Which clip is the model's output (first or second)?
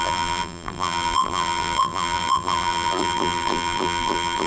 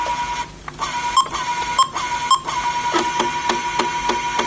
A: first